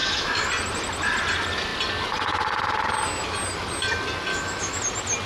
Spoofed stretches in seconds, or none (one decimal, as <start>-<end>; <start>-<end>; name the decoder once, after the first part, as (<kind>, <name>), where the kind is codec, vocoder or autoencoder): 0.0-0.5 (autoencoder, DAC-VAE); 4.3-4.8